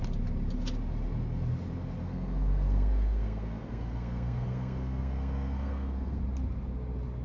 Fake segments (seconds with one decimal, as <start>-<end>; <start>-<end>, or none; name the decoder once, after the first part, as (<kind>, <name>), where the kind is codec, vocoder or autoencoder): 2.0-6.2 (codec, SNAC)